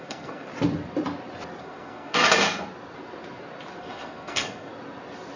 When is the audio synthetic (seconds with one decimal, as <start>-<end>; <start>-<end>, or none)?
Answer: 0.0-0.5; 1.6-2.2; 3.8-4.7